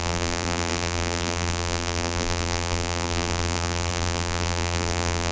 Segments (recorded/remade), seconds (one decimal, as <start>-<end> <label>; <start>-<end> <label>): 0.0-5.3 remade

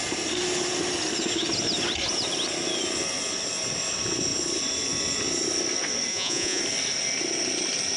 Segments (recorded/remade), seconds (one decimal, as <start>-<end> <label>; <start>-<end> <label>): 0.0-6.1 recorded; 6.1-6.6 remade; 6.6-8.0 recorded

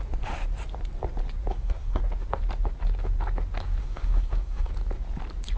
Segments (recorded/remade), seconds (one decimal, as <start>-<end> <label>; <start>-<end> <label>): 0.0-1.5 recorded; 1.5-2.0 remade; 2.0-3.8 recorded; 3.8-4.7 remade; 4.7-5.6 recorded

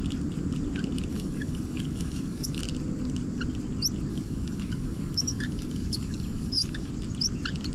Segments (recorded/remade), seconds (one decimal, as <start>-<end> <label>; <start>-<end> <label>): 0.0-1.1 recorded; 1.1-2.6 remade; 2.6-4.1 recorded; 4.1-6.9 remade; 6.9-7.7 recorded

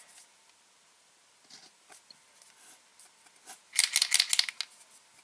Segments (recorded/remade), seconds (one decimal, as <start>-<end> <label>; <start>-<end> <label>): 0.0-5.2 recorded

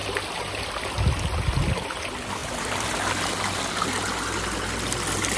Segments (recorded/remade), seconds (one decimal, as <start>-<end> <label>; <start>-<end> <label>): 0.0-2.4 recorded; 2.4-3.6 remade; 3.6-5.4 recorded